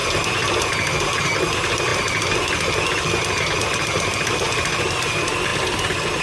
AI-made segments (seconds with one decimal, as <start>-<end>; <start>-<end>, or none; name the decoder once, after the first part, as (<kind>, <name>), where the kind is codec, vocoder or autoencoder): none